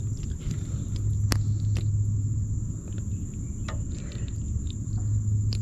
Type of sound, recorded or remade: recorded